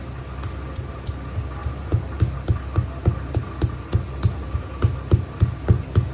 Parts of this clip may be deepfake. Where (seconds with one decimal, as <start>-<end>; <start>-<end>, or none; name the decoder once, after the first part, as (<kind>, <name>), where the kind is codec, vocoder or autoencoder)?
1.6-2.2 (vocoder, BigVGAN v2)